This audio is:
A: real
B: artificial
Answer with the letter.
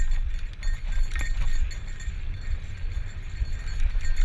A